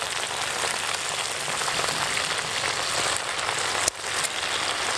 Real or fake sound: real